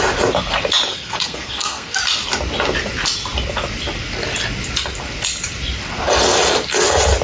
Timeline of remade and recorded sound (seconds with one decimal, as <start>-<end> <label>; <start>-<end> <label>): 0.0-0.9 recorded; 0.9-2.0 remade; 2.0-7.2 recorded